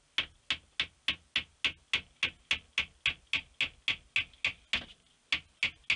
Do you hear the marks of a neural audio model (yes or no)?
no